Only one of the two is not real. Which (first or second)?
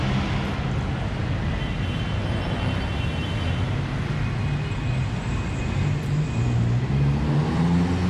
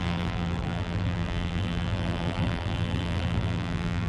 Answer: second